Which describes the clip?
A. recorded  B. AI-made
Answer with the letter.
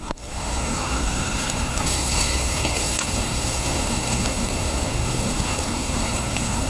B